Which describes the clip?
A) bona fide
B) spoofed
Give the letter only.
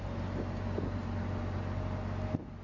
A